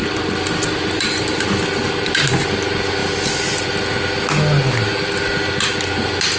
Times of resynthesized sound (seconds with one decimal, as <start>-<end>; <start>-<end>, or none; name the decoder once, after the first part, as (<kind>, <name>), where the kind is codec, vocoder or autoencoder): none